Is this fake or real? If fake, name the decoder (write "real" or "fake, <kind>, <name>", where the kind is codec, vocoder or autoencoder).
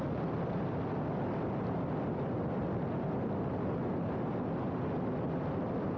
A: real